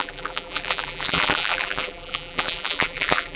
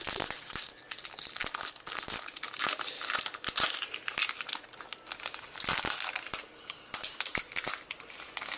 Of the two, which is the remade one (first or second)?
first